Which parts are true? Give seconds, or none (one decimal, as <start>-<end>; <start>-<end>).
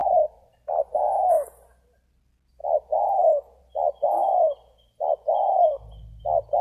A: 0.9-6.6